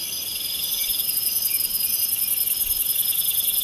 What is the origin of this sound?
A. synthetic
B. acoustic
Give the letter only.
A